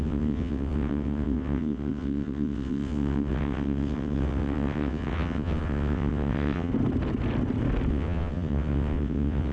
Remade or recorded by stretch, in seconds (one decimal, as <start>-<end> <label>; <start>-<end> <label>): 0.0-6.7 remade; 6.7-7.9 recorded; 7.9-9.5 remade